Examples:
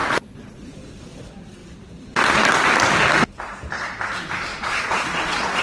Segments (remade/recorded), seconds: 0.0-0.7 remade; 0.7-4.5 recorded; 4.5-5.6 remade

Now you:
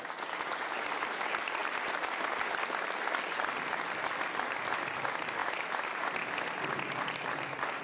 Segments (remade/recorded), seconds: 0.0-7.8 recorded

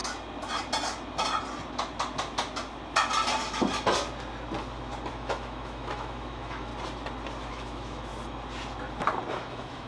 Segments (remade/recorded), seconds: 0.0-5.1 recorded; 5.1-6.7 remade; 6.7-7.5 recorded; 7.5-8.1 remade; 8.1-9.3 recorded; 9.3-9.9 remade

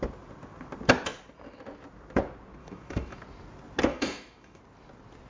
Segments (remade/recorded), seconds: 0.0-2.6 recorded; 2.6-3.2 remade; 3.2-3.9 recorded; 3.9-4.6 remade; 4.6-5.3 recorded

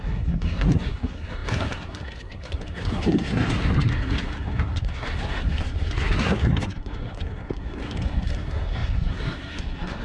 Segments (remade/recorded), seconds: 0.0-10.0 remade

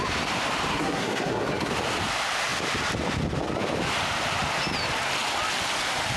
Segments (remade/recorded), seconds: 0.0-0.7 recorded; 0.7-1.7 remade; 1.7-6.2 recorded

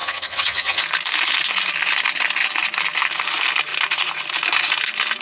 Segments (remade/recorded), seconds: 0.0-0.8 remade; 0.8-5.2 recorded

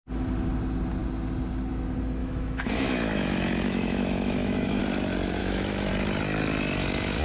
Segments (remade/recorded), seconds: 0.0-2.2 recorded; 2.2-4.8 remade; 4.8-5.4 recorded; 5.4-5.9 remade; 5.9-7.2 recorded